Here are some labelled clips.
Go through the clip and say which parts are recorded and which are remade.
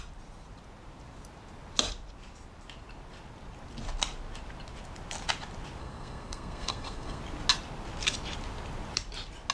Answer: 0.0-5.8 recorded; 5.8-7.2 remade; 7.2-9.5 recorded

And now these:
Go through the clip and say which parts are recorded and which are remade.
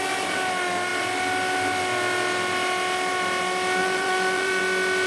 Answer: 0.0-3.8 recorded; 3.8-4.6 remade; 4.6-5.1 recorded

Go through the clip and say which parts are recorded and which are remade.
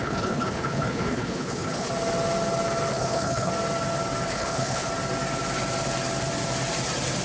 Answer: 0.0-1.9 remade; 1.9-2.9 recorded; 2.9-3.5 remade; 3.5-4.3 recorded; 4.3-4.9 remade; 4.9-7.2 recorded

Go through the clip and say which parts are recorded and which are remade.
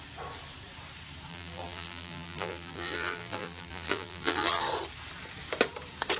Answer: 0.0-1.3 recorded; 1.3-4.6 remade; 4.6-6.2 recorded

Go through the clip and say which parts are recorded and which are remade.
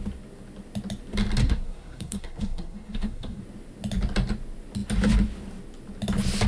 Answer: 0.0-1.4 recorded; 1.4-3.4 remade; 3.4-6.5 recorded